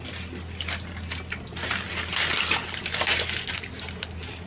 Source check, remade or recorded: recorded